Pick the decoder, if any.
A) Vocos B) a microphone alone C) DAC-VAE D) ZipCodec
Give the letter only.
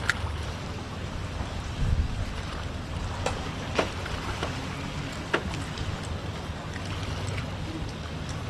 B